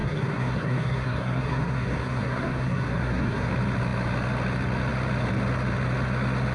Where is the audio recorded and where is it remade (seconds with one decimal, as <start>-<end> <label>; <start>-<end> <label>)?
0.0-3.5 remade; 3.5-6.5 recorded